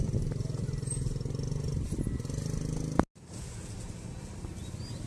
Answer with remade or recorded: recorded